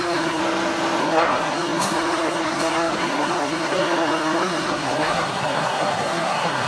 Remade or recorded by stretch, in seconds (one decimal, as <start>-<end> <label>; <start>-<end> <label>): 0.0-0.4 remade; 0.4-1.0 recorded; 1.0-6.7 remade